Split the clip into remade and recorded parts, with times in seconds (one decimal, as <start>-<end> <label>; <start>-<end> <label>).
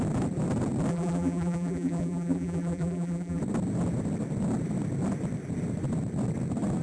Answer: 0.0-0.9 recorded; 0.9-3.4 remade; 3.4-6.8 recorded